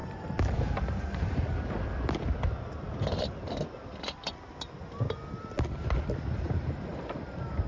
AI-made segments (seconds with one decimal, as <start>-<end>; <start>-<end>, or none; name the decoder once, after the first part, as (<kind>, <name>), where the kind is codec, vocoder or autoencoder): 0.0-4.5 (vocoder, BigVGAN v2); 6.9-7.7